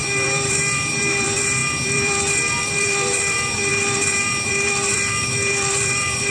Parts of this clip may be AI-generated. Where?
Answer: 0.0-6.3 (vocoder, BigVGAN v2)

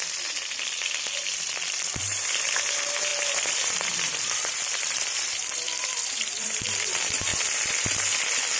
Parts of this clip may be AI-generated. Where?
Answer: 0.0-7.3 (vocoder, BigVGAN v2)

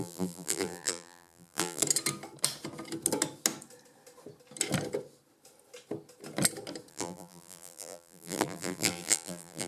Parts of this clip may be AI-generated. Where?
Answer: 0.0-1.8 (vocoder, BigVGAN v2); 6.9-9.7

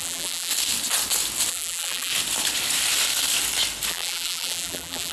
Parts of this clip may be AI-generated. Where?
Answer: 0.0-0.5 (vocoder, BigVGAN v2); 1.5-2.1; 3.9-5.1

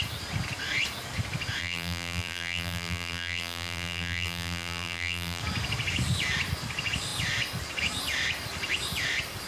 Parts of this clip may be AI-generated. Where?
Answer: 1.6-5.4 (vocoder, BigVGAN v2)

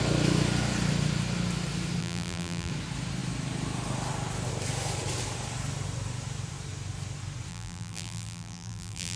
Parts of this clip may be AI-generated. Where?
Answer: 2.0-2.7 (vocoder, BigVGAN v2); 7.5-9.2